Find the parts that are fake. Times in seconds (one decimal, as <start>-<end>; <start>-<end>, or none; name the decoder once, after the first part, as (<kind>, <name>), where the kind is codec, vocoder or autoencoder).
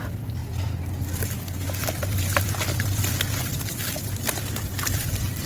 0.0-0.4 (vocoder, BigVGAN v2); 1.9-5.5